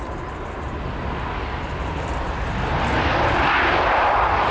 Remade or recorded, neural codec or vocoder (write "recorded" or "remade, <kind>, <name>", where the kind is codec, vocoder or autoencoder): recorded